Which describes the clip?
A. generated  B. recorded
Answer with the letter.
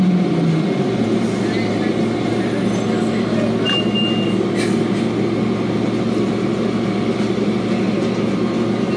B